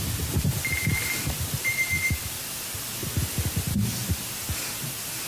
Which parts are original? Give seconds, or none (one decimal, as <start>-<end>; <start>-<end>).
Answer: 3.0-4.8